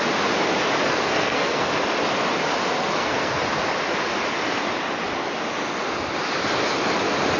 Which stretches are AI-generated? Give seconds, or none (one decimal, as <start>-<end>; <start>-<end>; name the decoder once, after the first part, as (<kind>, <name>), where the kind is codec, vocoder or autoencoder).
0.9-1.7 (codec, SNAC); 2.8-3.4